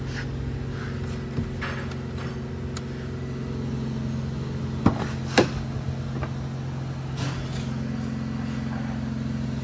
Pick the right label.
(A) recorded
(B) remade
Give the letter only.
A